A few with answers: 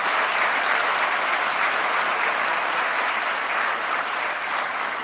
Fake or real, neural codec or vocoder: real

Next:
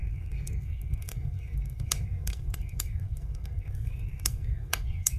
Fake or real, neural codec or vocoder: fake, codec, SNAC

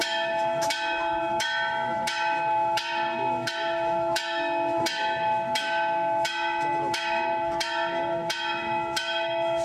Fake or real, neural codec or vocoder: fake, autoencoder, DAC-VAE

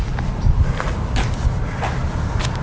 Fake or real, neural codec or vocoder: real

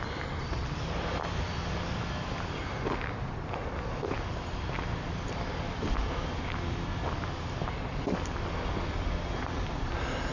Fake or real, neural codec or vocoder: real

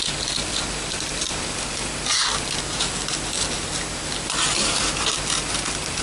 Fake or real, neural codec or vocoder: real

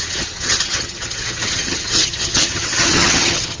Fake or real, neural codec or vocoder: fake, vocoder, HiFi-GAN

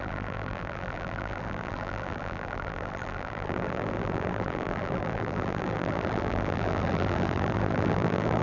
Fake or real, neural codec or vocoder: fake, vocoder, BigVGAN v2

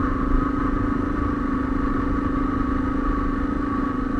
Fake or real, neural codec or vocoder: real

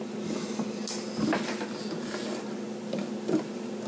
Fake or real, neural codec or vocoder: real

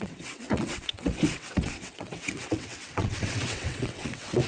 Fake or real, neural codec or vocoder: fake, vocoder, WaveNeXt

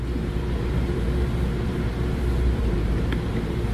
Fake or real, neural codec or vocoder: fake, vocoder, BigVGAN v2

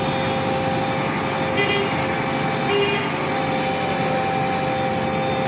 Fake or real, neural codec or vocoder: real